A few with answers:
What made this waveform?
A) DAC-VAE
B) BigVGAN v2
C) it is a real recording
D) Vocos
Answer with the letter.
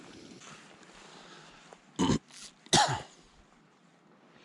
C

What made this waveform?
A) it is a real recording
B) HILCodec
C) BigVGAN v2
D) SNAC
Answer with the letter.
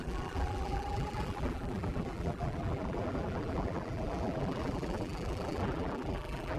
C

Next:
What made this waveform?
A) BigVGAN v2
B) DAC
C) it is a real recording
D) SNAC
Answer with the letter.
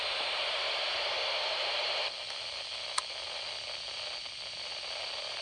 C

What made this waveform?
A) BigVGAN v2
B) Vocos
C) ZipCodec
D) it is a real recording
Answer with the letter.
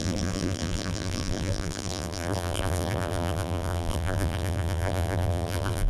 A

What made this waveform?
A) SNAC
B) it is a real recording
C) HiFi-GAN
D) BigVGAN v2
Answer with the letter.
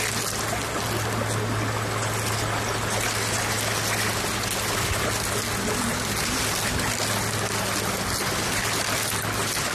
B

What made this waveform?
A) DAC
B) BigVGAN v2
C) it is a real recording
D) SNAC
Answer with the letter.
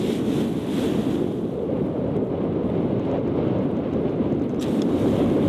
C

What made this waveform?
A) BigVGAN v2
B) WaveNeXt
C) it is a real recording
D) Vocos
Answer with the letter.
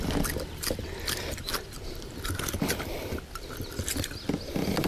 C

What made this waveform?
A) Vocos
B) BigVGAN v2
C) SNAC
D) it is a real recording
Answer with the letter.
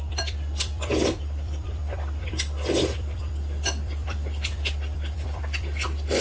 B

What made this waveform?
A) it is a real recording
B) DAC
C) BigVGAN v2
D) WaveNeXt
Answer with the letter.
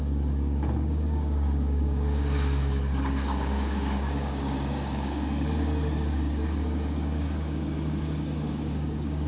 B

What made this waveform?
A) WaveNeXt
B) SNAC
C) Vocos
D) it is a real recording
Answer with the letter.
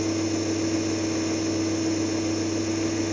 D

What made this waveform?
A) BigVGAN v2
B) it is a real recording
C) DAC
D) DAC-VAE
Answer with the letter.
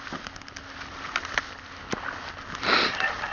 B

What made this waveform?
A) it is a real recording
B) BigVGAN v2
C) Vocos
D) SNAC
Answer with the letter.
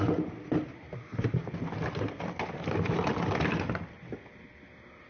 A